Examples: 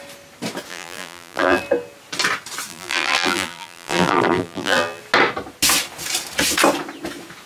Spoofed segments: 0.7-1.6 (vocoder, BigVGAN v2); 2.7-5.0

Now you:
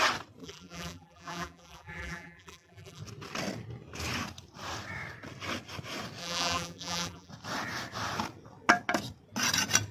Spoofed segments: 0.4-3.0 (vocoder, BigVGAN v2); 6.2-7.3

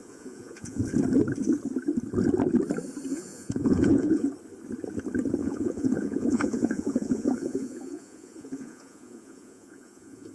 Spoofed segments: 0.0-0.8 (vocoder, Vocos); 3.1-4.3; 5.4-10.3

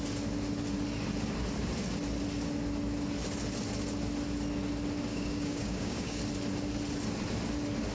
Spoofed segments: 5.1-6.2 (codec, DAC)